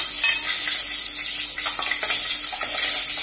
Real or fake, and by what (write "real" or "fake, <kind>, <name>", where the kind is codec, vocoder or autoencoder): real